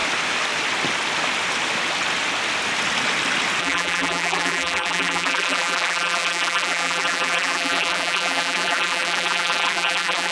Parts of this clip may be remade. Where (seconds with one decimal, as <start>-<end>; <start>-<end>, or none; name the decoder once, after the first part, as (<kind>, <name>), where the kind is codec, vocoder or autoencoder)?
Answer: 3.6-10.3 (vocoder, BigVGAN v2)